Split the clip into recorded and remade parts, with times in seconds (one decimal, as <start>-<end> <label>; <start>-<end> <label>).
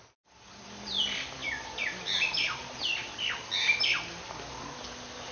0.0-5.3 recorded